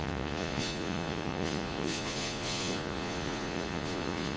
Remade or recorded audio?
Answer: remade